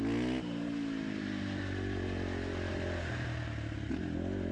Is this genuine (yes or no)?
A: yes